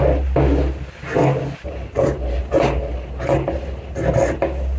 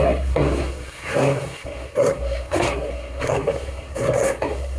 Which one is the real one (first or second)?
first